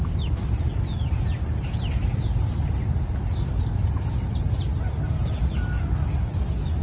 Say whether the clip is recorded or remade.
recorded